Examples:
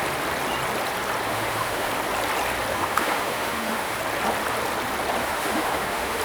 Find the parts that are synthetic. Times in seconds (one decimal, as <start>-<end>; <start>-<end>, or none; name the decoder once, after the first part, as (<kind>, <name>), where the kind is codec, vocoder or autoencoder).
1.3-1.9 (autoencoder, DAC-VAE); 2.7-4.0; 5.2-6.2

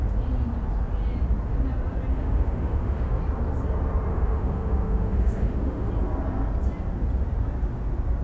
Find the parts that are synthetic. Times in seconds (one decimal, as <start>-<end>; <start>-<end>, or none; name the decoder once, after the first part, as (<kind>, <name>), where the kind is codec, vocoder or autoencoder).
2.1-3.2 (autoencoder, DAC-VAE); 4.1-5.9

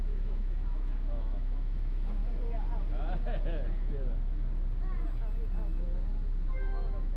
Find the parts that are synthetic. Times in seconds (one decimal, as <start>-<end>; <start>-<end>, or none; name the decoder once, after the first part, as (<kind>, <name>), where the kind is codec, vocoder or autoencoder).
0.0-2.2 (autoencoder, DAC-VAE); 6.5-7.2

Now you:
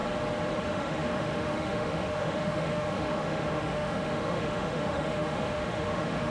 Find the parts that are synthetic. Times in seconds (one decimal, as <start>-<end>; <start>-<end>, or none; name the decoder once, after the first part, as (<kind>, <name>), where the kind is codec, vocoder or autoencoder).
0.6-6.3 (autoencoder, DAC-VAE)

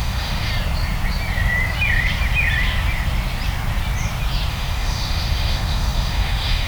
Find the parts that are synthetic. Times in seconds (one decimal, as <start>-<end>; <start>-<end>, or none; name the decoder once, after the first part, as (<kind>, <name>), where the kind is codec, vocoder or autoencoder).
0.0-0.5 (autoencoder, DAC-VAE); 4.5-6.7

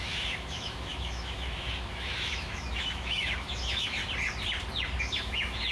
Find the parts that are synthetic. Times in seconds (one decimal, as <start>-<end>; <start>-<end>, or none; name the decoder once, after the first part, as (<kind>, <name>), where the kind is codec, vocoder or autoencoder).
0.0-4.0 (autoencoder, DAC-VAE); 5.0-5.7

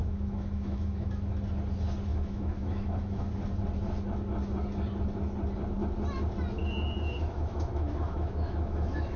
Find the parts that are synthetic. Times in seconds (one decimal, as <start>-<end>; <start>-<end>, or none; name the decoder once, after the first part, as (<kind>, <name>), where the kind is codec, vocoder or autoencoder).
0.0-1.1 (autoencoder, DAC-VAE); 2.1-3.3; 6.6-9.2